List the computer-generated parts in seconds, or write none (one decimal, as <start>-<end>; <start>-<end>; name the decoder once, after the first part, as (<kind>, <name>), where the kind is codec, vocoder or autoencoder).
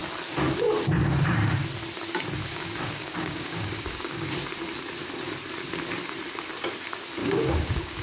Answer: 2.4-4.3 (codec, DAC); 7.2-8.0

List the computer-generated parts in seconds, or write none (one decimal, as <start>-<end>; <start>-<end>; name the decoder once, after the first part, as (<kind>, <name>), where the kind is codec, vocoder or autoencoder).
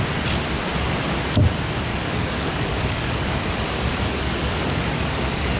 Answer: 1.9-5.6 (codec, DAC)